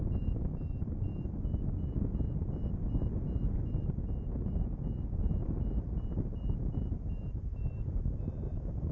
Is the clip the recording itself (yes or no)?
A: yes